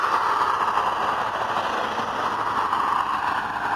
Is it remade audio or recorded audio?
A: recorded